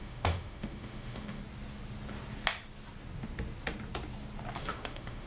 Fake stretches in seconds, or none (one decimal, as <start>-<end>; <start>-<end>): 0.0-1.4; 4.6-5.3